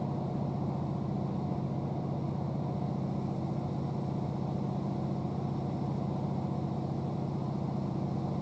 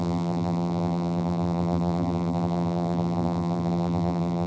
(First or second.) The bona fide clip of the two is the first